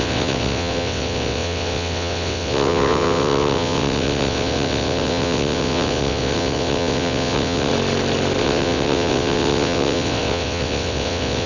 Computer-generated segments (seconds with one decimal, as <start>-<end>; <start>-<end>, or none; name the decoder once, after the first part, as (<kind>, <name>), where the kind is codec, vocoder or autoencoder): 0.0-7.7 (vocoder, WaveNeXt); 8.4-11.5